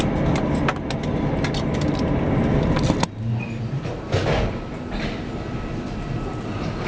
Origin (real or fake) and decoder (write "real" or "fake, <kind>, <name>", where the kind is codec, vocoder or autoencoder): real